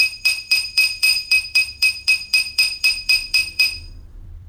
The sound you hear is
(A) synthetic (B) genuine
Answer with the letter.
A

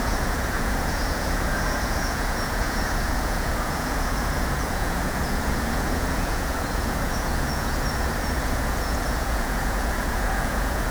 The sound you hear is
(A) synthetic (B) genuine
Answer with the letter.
A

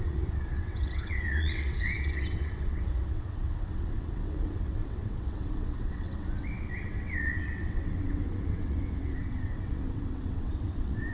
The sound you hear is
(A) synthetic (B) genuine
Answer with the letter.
A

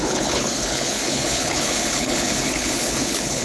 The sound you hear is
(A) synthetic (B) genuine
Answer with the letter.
A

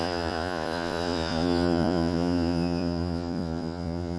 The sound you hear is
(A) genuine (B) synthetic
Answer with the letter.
B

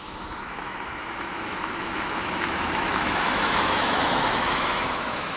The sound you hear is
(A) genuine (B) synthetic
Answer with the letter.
B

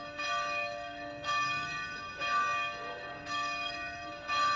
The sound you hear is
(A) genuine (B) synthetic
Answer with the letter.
B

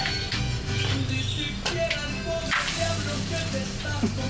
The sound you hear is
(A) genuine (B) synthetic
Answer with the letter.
A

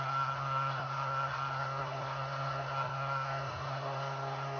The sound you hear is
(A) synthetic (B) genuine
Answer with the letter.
A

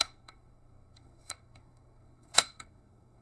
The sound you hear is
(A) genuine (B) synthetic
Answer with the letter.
B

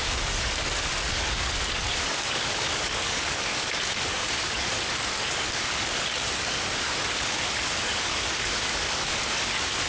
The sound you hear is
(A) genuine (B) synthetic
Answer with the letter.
B